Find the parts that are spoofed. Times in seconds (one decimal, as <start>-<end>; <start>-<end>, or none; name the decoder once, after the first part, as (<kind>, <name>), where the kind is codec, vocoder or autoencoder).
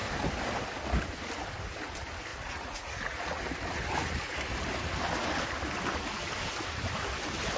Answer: 2.3-3.4 (vocoder, Vocos)